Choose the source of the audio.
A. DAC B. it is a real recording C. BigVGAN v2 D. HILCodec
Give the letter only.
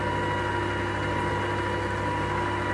B